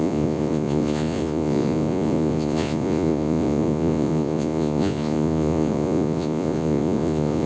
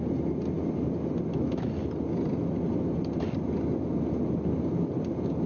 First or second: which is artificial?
first